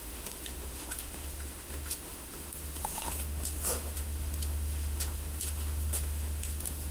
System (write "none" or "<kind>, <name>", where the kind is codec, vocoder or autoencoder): autoencoder, DAC-VAE